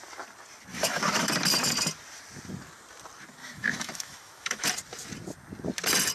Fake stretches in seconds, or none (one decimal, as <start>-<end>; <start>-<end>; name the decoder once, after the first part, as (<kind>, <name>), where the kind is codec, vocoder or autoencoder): 0.7-1.3 (autoencoder, DAC-VAE); 3.4-4.7

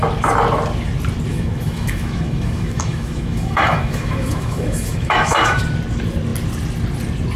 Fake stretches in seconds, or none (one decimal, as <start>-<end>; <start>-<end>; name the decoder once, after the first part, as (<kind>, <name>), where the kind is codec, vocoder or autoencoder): 1.3-5.6 (autoencoder, DAC-VAE)

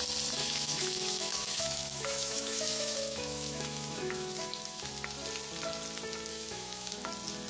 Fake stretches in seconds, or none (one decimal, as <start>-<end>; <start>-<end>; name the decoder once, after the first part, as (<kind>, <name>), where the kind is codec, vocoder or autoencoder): 0.4-4.9 (autoencoder, DAC-VAE); 6.3-7.1